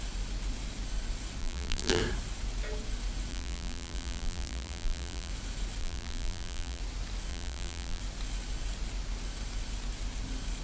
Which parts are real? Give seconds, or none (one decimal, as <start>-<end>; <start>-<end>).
0.0-1.4; 2.0-3.3; 5.3-5.8; 6.8-7.3; 8.0-10.6